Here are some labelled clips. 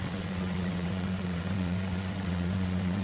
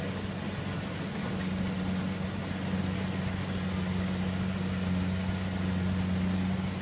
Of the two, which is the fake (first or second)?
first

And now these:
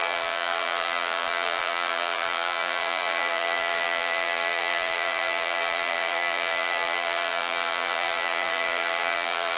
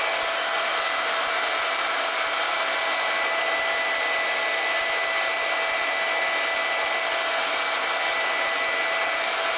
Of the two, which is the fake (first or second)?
first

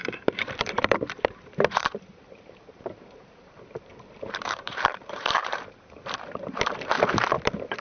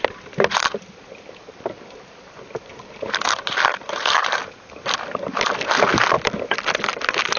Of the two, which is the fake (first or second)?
first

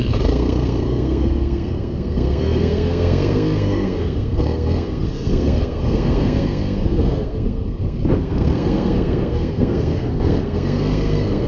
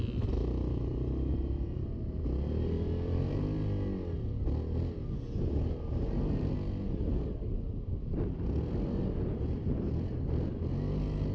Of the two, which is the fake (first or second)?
first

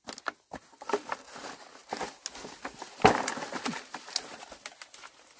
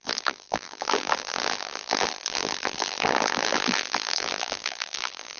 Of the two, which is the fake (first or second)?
second